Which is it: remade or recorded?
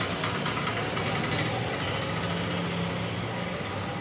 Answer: recorded